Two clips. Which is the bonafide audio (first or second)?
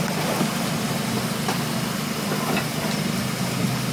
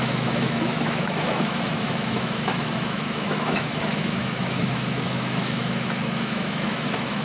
first